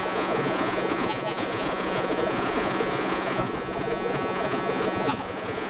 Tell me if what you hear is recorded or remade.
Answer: remade